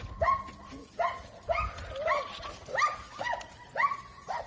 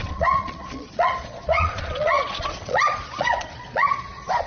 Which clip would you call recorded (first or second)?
first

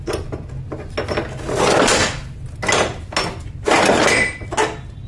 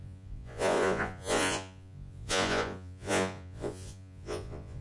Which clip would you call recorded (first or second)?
first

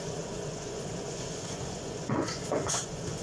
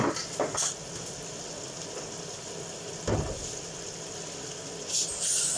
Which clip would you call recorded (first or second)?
second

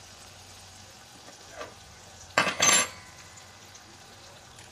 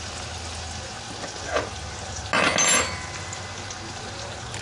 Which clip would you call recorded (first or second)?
second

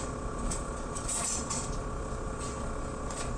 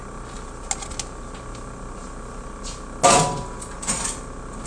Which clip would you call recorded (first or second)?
second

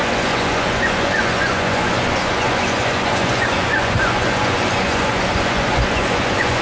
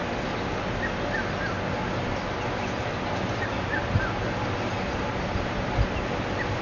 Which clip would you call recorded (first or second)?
second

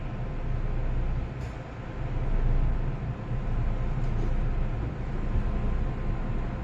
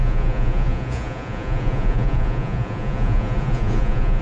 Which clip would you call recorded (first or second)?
first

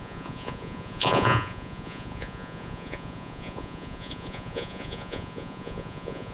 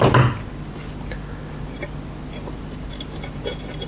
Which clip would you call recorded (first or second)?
second